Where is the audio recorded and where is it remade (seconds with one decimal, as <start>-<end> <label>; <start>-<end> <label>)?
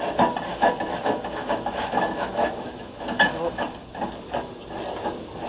0.0-0.5 recorded; 0.5-3.8 remade; 3.8-5.5 recorded